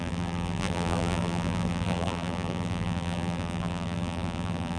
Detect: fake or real fake